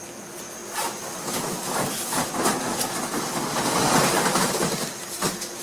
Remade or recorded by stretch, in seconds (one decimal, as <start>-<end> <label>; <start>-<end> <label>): 0.0-5.6 recorded